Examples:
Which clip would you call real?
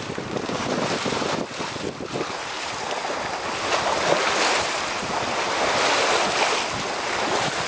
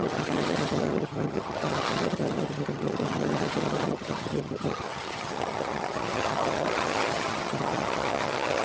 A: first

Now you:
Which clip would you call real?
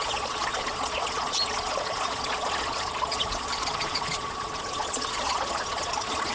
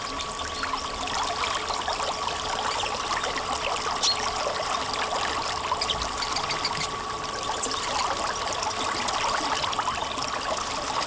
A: second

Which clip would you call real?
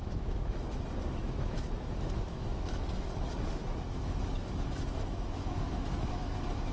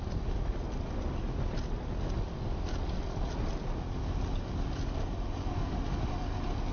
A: second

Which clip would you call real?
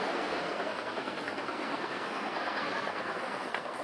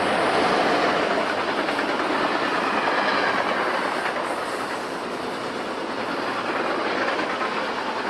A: second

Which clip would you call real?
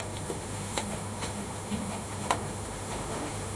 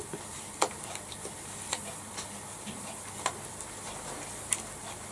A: second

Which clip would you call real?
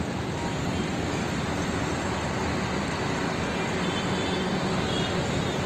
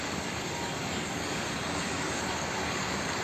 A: first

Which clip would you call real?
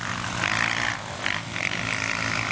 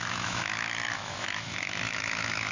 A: first